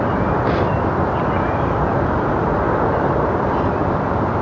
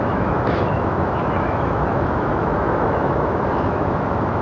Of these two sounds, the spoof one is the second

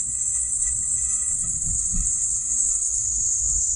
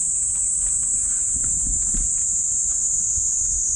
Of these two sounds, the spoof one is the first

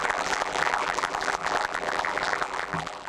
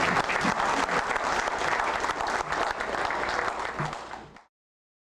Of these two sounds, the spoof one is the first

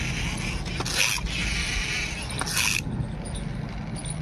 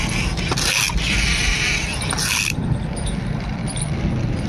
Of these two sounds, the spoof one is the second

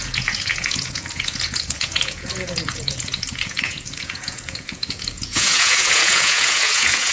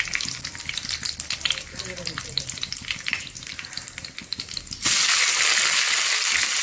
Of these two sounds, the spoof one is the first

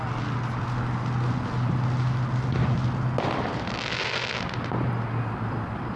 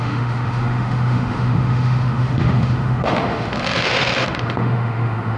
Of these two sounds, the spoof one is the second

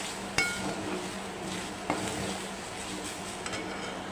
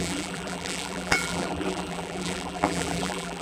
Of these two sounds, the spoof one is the second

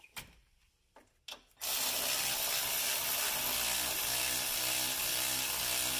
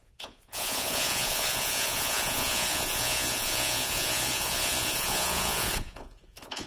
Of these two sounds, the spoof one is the second